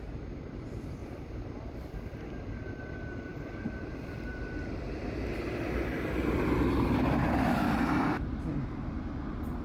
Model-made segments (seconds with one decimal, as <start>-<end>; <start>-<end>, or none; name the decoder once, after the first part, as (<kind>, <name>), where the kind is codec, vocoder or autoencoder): 1.0-1.8 (vocoder, BigVGAN v2); 3.3-4.6